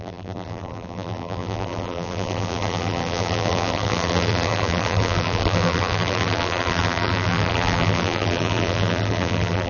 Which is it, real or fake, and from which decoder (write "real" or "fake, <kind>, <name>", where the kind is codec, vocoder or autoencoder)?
fake, vocoder, BigVGAN v2